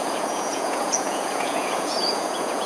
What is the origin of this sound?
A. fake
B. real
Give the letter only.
A